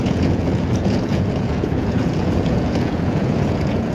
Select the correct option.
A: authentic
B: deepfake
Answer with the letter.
B